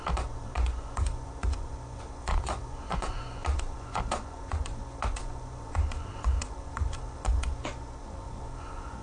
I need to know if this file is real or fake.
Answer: fake